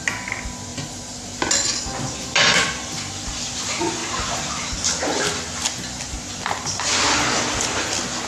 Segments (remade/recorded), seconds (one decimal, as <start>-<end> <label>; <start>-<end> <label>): 0.0-8.3 recorded